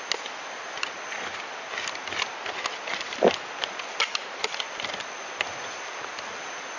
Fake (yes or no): no